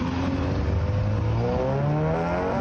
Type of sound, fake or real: real